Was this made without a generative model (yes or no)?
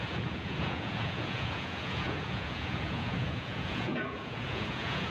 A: no